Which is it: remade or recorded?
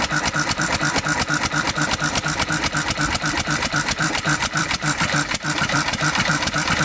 remade